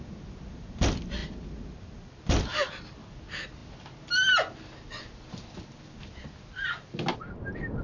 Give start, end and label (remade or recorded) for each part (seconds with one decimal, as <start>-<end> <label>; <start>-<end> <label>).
0.0-7.8 recorded